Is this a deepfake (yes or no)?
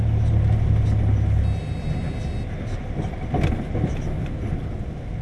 no